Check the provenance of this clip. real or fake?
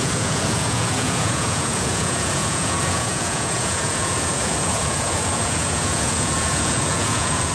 fake